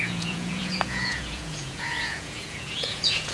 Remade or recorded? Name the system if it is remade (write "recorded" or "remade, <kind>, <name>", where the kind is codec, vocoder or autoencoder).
remade, vocoder, Vocos